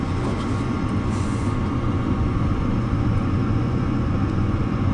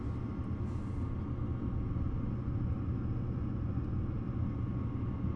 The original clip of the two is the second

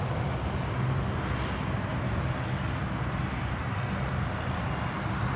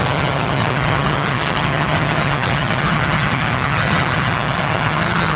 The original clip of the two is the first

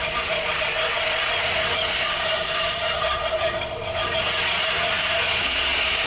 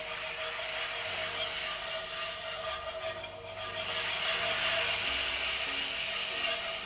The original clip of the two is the second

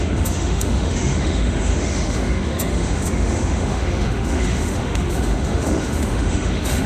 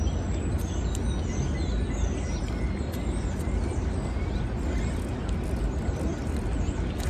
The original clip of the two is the second